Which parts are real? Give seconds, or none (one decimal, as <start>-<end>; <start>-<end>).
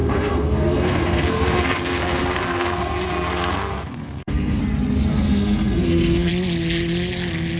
4.6-5.1; 6.3-7.6